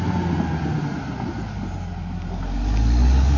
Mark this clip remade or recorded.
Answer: recorded